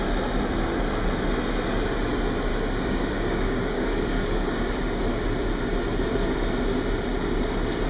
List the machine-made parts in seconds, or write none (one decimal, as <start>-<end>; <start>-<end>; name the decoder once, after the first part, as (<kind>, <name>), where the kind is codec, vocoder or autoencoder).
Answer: 2.5-5.0 (codec, DAC)